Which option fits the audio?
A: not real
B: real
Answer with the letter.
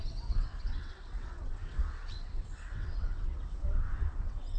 A